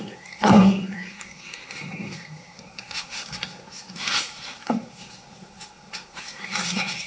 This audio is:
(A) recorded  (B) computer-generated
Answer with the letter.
B